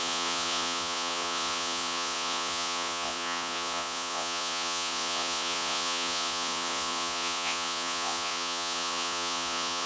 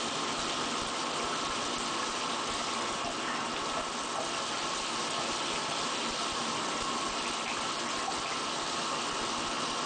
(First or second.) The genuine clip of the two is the second